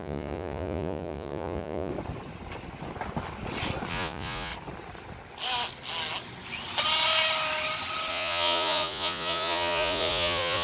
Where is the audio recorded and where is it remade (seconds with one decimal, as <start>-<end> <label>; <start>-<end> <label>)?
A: 0.0-1.9 remade; 1.9-3.9 recorded; 3.9-4.5 remade; 4.5-8.1 recorded; 8.1-10.6 remade